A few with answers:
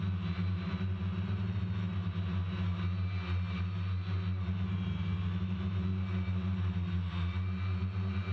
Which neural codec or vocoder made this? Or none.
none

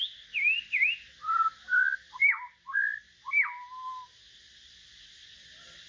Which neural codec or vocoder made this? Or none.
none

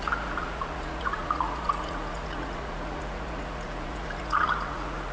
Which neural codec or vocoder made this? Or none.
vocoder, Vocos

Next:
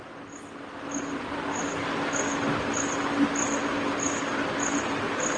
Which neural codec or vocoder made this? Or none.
none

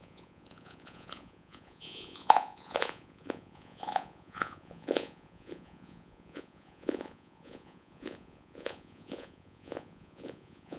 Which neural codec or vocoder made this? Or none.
vocoder, Vocos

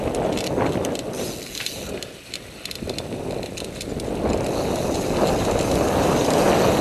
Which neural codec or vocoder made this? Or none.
none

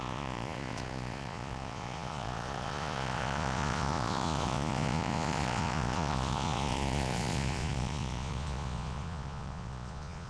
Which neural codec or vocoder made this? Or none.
vocoder, Vocos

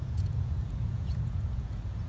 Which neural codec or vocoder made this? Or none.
vocoder, Vocos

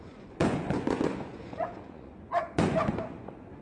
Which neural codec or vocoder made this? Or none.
vocoder, Vocos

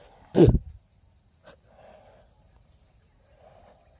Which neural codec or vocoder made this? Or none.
none